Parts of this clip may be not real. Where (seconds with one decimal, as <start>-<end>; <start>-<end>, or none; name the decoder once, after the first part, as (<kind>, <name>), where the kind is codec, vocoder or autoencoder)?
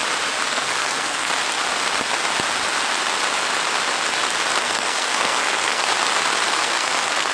0.5-1.3 (codec, SNAC); 4.6-5.9; 6.5-7.3